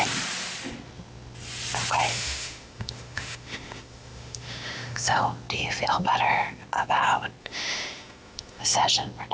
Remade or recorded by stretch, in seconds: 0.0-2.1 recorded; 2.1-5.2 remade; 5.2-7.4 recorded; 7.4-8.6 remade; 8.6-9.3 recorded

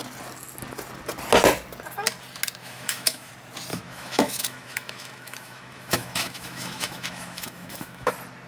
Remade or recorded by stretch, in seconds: 0.0-2.6 recorded; 2.6-3.3 remade; 3.3-3.7 recorded; 3.7-8.1 remade; 8.1-8.5 recorded

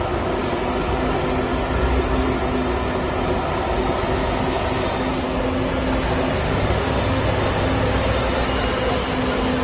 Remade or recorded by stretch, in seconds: 0.0-6.4 recorded; 6.4-7.2 remade; 7.2-9.6 recorded

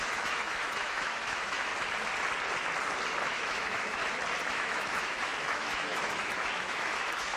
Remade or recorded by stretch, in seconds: 0.0-1.7 remade; 1.7-3.2 recorded; 3.2-4.0 remade; 4.0-4.5 recorded; 4.5-7.4 remade

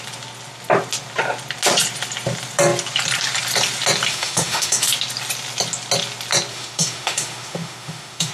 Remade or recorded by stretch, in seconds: 0.0-4.1 recorded; 4.1-4.9 remade; 4.9-6.5 recorded; 6.5-8.3 remade

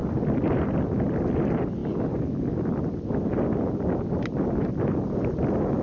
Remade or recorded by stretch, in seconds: 0.0-5.8 recorded